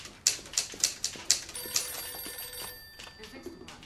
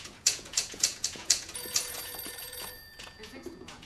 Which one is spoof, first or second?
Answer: second